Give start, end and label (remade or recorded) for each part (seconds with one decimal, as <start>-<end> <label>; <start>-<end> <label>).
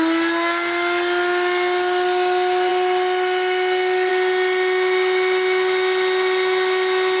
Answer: 0.0-7.2 recorded